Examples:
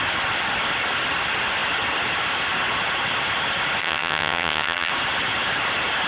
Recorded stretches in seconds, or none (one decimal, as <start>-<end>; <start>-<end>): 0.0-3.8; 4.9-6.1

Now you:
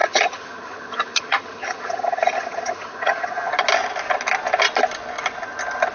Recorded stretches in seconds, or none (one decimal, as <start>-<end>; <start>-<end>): 3.5-5.9

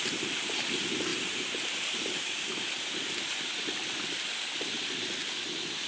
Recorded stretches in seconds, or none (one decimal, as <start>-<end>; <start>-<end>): 0.0-5.9